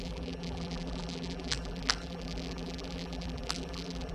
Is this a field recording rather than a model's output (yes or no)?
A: no